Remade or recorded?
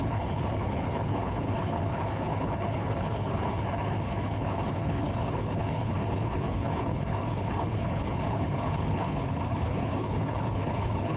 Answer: remade